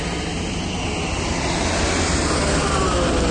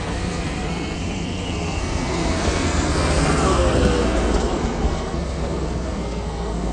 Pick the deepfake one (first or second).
second